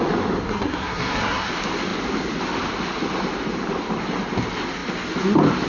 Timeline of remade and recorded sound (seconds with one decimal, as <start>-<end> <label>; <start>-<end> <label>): 0.0-0.4 recorded; 0.4-1.5 remade; 1.5-5.7 recorded